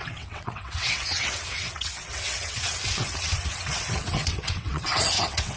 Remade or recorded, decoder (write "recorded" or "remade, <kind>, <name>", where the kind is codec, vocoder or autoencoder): remade, vocoder, WaveNeXt